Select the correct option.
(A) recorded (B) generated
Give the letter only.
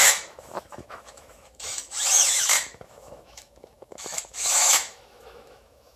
B